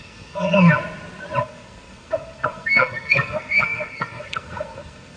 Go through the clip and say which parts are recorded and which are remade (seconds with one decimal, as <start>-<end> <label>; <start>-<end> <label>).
0.0-0.8 remade; 0.8-1.4 recorded; 1.4-5.2 remade